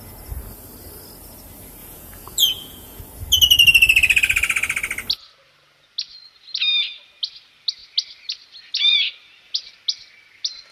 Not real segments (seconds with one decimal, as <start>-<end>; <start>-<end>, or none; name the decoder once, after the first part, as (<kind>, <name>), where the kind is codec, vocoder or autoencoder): 1.8-3.0 (vocoder, Vocos)